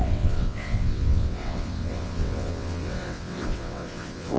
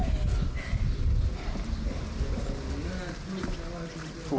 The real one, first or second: second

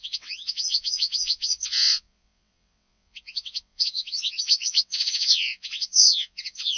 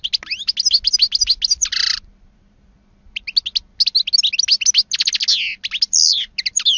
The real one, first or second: second